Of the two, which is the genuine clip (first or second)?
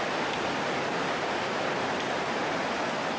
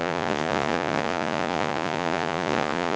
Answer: first